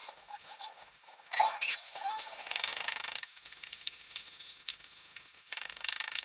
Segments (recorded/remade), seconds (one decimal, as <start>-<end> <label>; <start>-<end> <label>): 0.0-6.2 remade